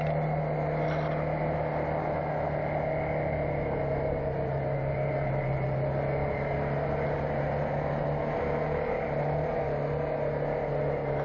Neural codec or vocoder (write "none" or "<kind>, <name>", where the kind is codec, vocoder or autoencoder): none